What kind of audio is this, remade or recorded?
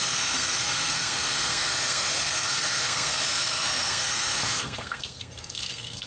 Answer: remade